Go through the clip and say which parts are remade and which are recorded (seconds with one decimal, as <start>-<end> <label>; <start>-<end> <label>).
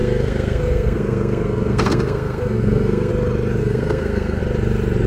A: 0.0-3.1 remade; 3.1-3.6 recorded; 3.6-4.4 remade; 4.4-5.1 recorded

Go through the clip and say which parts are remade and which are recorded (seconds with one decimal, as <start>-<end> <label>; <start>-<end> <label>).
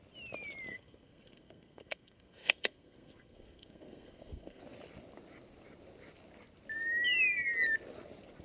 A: 0.0-0.7 recorded; 0.7-4.6 remade; 4.6-8.4 recorded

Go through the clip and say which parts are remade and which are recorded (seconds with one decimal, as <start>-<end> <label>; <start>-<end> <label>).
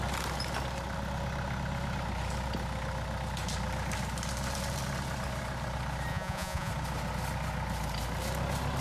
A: 0.0-6.1 recorded; 6.1-6.7 remade; 6.7-8.8 recorded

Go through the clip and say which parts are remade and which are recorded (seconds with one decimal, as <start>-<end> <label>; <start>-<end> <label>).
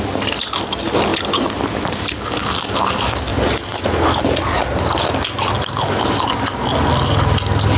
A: 0.0-1.1 recorded; 1.1-2.8 remade; 2.8-3.3 recorded; 3.3-4.8 remade; 4.8-7.8 recorded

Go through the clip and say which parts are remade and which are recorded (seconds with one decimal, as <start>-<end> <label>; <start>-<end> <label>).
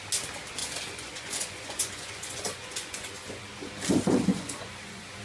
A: 0.0-0.6 recorded; 0.6-3.7 remade; 3.7-4.3 recorded; 4.3-5.2 remade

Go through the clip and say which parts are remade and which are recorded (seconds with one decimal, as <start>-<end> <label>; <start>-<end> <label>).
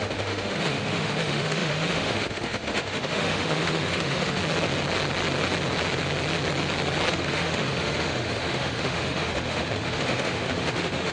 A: 0.0-4.4 remade; 4.4-7.1 recorded; 7.1-11.1 remade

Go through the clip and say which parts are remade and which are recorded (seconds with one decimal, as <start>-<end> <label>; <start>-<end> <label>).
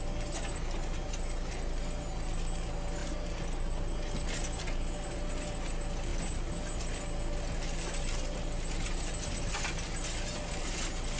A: 0.0-11.2 recorded